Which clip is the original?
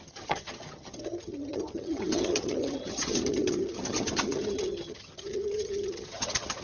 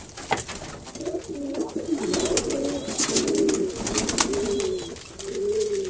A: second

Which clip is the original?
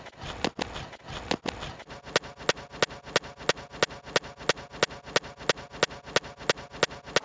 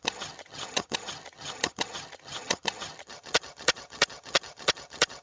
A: first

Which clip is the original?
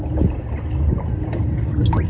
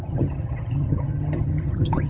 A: first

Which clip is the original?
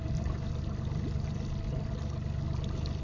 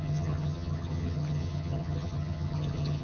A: first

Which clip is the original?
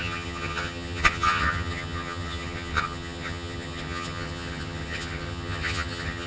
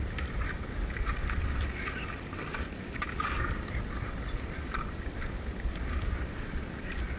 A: second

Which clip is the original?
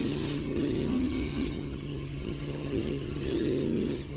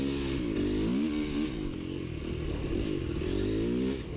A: second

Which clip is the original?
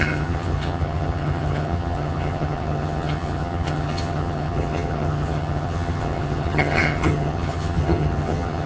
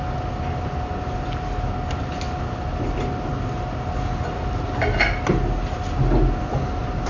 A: second